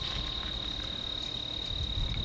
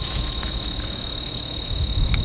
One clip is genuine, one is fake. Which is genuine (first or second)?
first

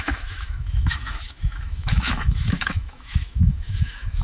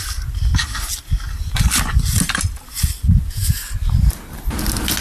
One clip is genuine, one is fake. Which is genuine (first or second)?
second